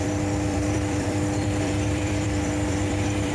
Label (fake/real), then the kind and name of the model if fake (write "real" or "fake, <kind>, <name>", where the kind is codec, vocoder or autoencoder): fake, vocoder, BigVGAN v2